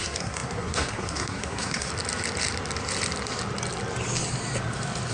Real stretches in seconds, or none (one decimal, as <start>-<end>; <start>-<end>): 1.9-5.1